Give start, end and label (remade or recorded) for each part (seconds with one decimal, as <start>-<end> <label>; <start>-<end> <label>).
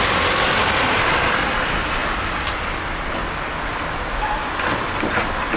0.0-5.6 recorded